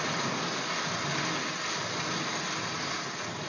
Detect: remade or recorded recorded